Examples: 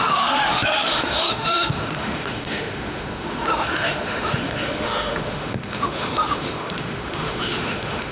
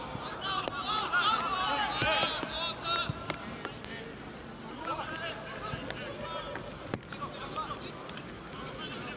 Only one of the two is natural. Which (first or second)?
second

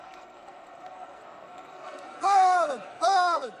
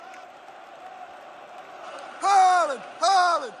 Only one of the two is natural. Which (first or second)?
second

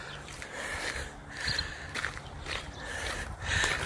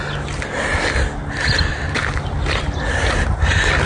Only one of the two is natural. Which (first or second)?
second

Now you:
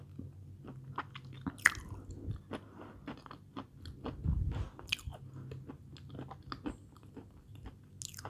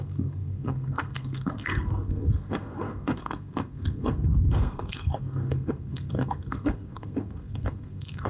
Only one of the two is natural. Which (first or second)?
first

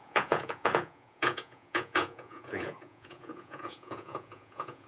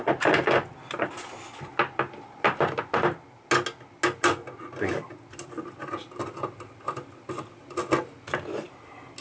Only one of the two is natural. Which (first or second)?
second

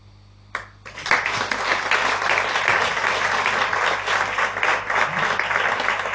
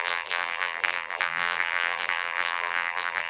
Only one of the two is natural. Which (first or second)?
first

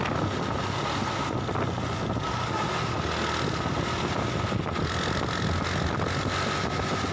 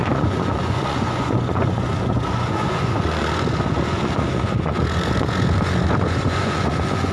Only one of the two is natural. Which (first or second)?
first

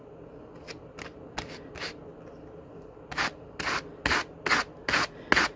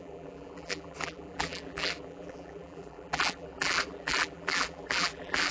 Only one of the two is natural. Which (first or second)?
first